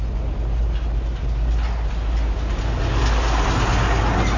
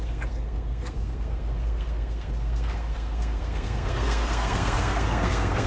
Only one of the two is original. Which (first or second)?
first